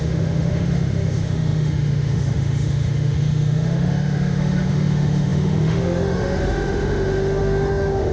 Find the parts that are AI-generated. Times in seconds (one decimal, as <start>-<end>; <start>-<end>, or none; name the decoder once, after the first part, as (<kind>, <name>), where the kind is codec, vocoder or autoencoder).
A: 0.0-8.1 (autoencoder, DAC-VAE)